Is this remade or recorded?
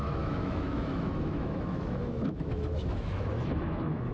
remade